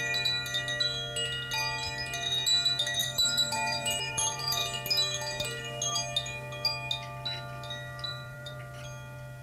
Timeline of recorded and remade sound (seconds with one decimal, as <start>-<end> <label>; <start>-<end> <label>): 0.0-3.0 recorded; 3.0-4.6 remade; 4.6-8.1 recorded; 8.1-8.6 remade; 8.6-9.4 recorded